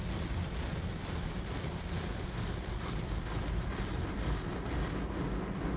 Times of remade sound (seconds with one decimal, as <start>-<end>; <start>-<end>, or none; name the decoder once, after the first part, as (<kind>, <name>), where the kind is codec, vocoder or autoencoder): none